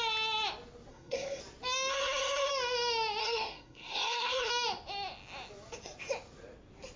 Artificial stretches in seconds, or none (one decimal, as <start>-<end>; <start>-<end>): 0.9-1.4; 1.9-2.5; 3.2-4.5